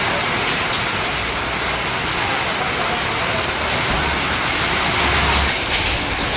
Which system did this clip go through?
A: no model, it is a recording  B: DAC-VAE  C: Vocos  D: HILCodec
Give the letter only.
A